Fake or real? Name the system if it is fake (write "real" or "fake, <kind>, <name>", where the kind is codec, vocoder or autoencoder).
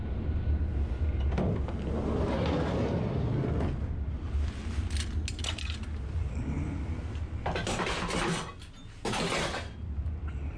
real